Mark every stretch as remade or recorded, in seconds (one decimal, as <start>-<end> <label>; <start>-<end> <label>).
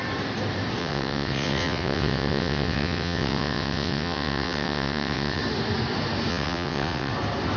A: 0.0-0.8 recorded; 0.8-5.4 remade; 5.4-6.3 recorded; 6.3-7.1 remade; 7.1-7.6 recorded